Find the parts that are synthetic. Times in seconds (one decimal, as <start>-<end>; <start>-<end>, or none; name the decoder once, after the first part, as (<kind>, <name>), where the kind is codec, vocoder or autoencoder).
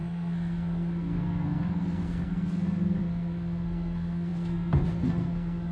0.0-5.7 (codec, SNAC)